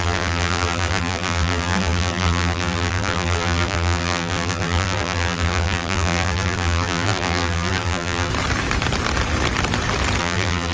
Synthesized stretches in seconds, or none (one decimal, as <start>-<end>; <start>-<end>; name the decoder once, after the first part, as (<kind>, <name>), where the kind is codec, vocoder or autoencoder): 0.0-8.3 (vocoder, BigVGAN v2); 10.2-10.7